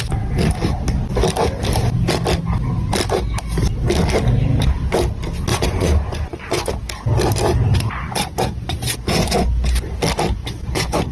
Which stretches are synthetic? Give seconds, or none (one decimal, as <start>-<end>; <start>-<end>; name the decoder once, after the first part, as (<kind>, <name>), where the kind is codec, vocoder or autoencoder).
5.5-6.7 (vocoder, Vocos); 7.7-9.9; 10.4-11.1